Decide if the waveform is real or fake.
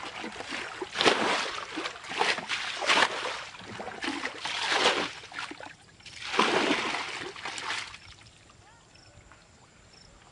real